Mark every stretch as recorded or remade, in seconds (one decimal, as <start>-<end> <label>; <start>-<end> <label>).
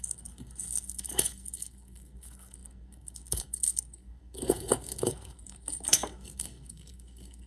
0.0-7.5 remade